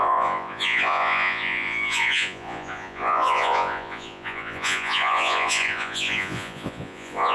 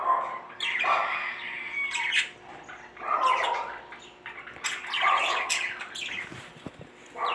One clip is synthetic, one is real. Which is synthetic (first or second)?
first